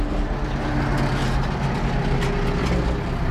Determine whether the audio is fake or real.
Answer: real